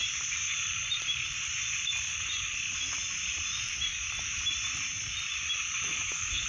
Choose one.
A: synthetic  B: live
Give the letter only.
A